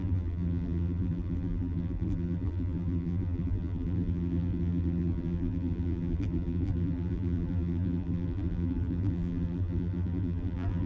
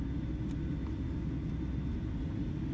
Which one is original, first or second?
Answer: second